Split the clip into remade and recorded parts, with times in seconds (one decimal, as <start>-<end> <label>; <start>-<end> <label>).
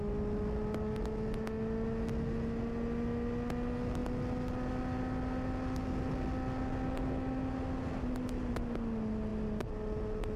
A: 0.0-10.4 recorded